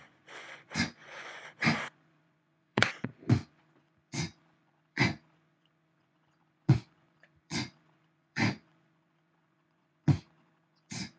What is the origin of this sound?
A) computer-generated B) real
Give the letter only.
A